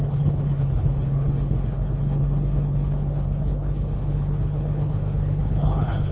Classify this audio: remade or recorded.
remade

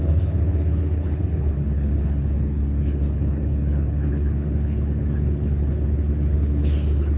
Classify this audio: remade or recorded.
remade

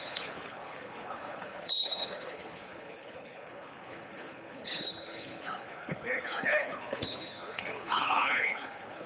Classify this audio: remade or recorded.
remade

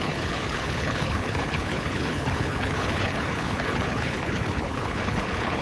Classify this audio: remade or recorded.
remade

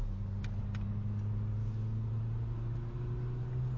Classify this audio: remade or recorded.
recorded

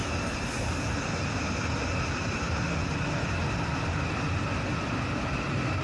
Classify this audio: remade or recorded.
recorded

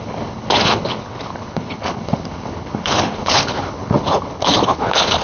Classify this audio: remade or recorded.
remade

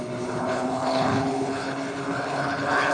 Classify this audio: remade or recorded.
remade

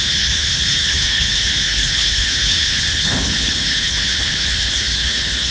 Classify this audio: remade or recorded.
remade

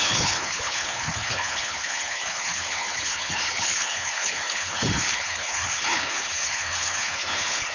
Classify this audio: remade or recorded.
remade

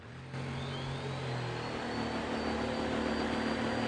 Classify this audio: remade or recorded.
recorded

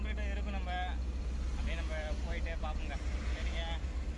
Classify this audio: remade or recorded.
recorded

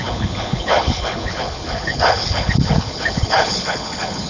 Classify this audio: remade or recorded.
remade